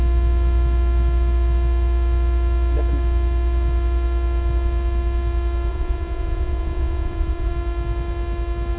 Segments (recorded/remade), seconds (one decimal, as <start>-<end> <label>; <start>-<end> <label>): 0.0-5.7 recorded; 5.7-7.5 remade; 7.5-8.8 recorded